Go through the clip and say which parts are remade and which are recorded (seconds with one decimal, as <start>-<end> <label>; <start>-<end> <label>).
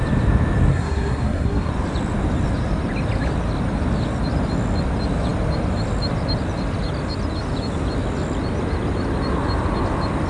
0.0-0.7 recorded; 0.7-1.7 remade; 1.7-10.3 recorded